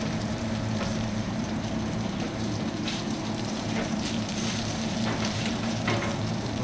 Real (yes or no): no